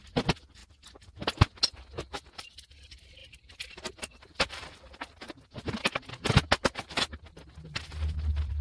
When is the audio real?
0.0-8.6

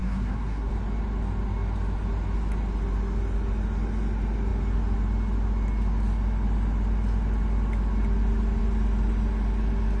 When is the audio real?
0.7-10.0

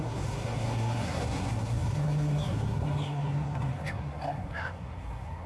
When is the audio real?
none

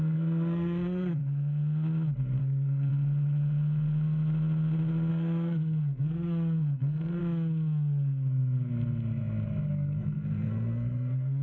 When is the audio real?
1.2-2.4; 2.9-5.1; 7.2-9.7

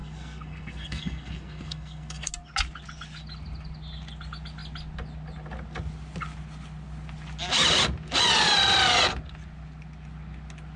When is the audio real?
2.3-10.8

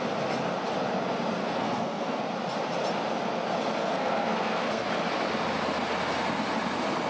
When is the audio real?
0.0-1.4; 2.2-3.8; 4.9-7.1

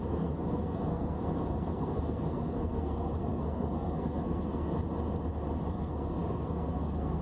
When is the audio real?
4.8-5.7